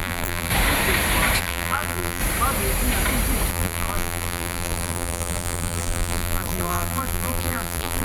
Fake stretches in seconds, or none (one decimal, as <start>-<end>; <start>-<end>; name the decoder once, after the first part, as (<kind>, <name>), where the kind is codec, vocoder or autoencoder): 0.0-0.5 (vocoder, BigVGAN v2); 1.4-2.2; 3.5-8.0

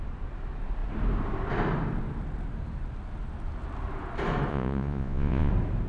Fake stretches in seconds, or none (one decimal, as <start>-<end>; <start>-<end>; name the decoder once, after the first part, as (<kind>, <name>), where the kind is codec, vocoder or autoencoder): 4.5-5.5 (vocoder, Vocos)